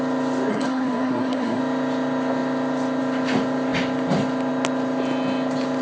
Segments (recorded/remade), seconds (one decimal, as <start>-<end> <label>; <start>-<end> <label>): 0.0-0.5 recorded; 0.5-1.6 remade; 1.6-5.8 recorded